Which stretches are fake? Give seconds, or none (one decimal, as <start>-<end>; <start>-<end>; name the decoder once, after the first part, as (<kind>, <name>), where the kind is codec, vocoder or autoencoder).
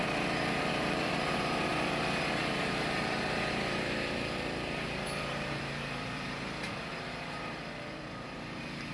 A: 0.0-1.7 (vocoder, BigVGAN v2); 2.4-8.9